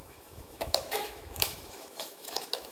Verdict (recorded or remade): remade